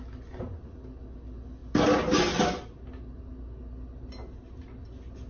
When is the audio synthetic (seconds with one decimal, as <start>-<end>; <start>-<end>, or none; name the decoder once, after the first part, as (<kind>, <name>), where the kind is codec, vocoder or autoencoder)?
none